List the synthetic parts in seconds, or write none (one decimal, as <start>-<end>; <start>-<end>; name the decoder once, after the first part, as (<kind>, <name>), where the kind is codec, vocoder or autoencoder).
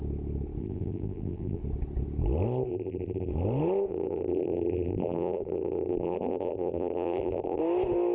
0.6-1.6 (vocoder, BigVGAN v2); 2.7-3.3; 3.9-7.6